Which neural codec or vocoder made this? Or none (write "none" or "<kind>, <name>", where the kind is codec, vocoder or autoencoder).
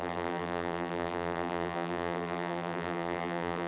vocoder, BigVGAN v2